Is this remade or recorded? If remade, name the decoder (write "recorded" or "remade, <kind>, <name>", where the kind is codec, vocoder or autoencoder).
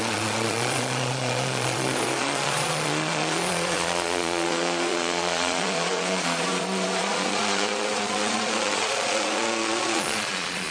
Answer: remade, vocoder, Vocos